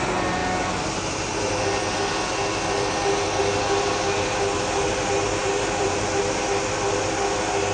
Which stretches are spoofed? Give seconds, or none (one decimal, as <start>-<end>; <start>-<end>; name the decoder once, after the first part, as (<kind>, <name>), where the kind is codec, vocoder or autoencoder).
5.4-6.2 (vocoder, BigVGAN v2)